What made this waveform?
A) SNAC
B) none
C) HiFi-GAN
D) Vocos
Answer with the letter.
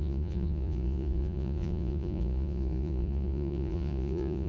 D